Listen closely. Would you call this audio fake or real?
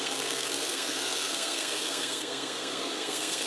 fake